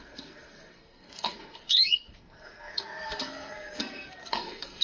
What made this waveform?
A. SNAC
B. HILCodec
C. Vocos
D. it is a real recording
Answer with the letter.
A